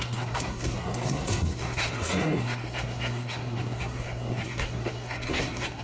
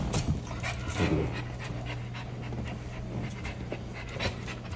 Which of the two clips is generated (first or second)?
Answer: first